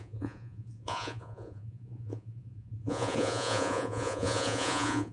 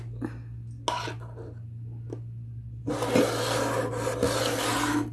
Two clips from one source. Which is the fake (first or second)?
first